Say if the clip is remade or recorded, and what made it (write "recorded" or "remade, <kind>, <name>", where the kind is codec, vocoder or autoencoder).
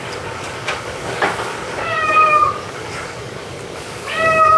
remade, codec, DAC